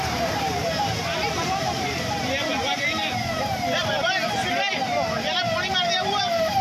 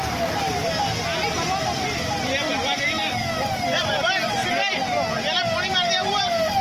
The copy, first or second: first